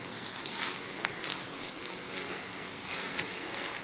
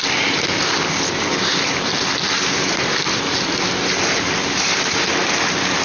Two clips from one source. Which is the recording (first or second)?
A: second